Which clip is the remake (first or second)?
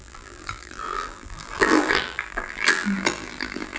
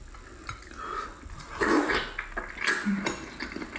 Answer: first